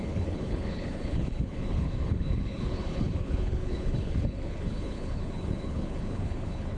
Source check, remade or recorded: remade